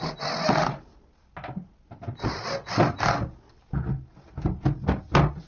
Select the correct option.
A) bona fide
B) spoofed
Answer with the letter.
A